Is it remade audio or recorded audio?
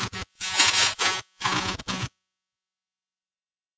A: remade